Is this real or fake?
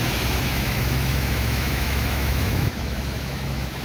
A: fake